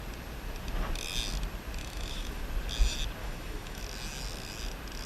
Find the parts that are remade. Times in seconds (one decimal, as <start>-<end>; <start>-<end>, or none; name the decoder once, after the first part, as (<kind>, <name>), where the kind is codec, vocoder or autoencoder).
1.8-2.4 (autoencoder, DAC-VAE); 3.2-3.8